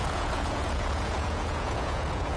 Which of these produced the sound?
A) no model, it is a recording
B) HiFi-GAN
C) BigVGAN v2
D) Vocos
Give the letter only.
D